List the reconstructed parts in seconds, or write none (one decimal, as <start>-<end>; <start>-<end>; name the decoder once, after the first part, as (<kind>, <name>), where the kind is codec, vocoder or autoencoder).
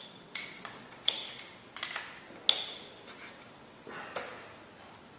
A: 0.0-1.2 (vocoder, WaveNeXt); 3.3-3.8